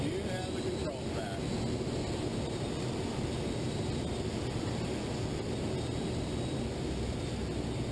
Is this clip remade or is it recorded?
recorded